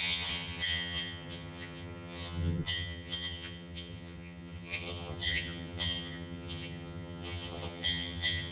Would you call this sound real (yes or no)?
no